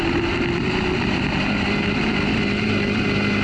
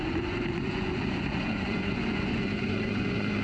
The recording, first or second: first